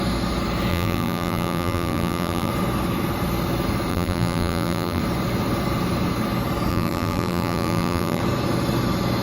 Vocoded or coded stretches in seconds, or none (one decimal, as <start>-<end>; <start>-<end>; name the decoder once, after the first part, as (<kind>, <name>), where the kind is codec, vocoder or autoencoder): 0.7-2.5 (vocoder, BigVGAN v2); 3.9-5.0; 6.7-8.2